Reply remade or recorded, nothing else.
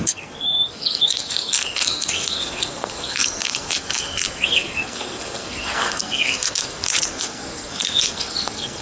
remade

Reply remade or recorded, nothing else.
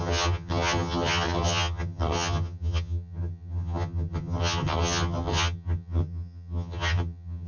remade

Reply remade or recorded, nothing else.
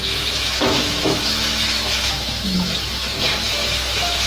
remade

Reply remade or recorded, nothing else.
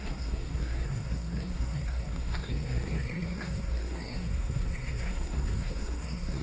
remade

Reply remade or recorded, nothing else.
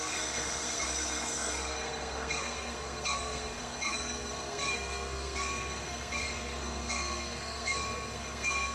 remade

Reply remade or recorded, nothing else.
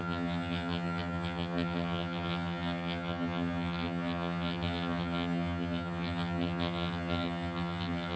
remade